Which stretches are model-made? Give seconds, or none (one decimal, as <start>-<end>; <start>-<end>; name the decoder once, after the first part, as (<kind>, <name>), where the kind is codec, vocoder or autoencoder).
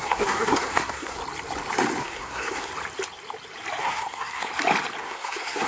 0.0-1.2 (codec, SNAC); 2.0-2.7; 3.8-4.5; 5.0-5.7